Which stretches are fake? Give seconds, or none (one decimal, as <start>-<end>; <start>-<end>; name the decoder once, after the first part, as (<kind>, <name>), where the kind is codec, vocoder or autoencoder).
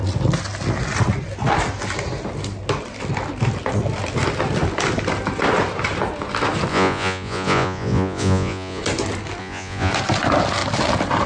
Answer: 6.7-8.8 (vocoder, Vocos); 9.4-9.9